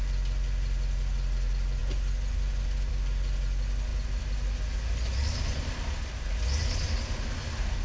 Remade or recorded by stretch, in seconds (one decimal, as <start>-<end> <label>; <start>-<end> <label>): 0.0-7.8 recorded